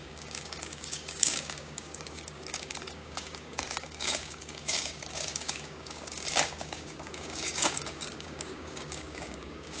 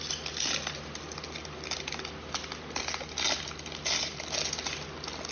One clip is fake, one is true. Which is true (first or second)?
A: second